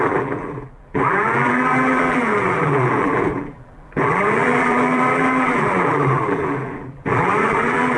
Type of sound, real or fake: fake